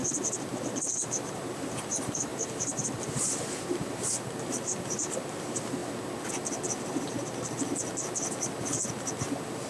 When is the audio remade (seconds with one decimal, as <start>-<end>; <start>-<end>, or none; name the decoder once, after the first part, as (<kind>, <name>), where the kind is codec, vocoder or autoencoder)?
1.0-5.8 (vocoder, BigVGAN v2)